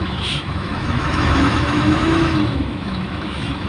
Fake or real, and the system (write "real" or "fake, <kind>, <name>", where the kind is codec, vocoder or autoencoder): fake, autoencoder, DAC-VAE